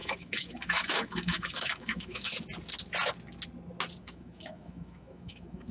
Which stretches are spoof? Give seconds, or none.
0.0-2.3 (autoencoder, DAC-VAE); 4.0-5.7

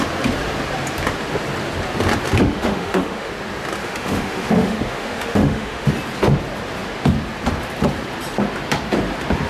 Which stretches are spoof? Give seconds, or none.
2.4-3.3 (autoencoder, DAC-VAE); 3.8-5.9

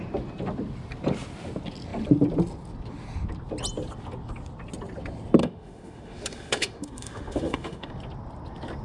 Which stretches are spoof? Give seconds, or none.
5.4-7.9 (autoencoder, DAC-VAE)

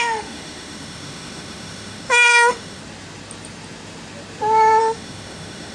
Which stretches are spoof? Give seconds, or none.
0.0-2.8 (autoencoder, DAC-VAE); 4.8-5.7

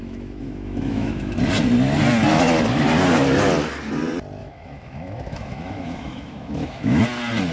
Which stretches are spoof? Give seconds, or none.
0.0-1.4 (autoencoder, DAC-VAE); 4.4-7.0

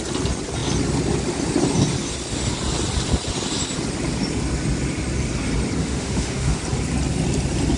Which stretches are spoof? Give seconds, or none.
5.8-6.6 (autoencoder, DAC-VAE)